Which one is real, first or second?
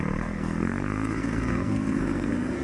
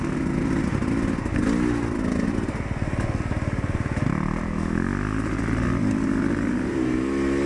second